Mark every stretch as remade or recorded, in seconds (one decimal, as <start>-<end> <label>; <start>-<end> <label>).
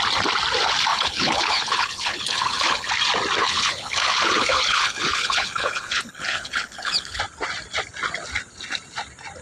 0.0-0.9 recorded; 0.9-2.9 remade; 2.9-3.4 recorded; 3.4-7.2 remade; 7.2-9.4 recorded